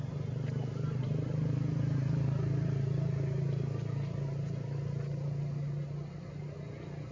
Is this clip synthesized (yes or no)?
no